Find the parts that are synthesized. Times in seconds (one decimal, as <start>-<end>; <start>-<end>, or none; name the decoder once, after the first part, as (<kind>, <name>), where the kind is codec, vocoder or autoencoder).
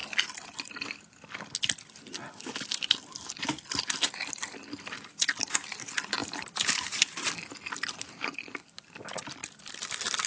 6.2-7.3 (vocoder, BigVGAN v2)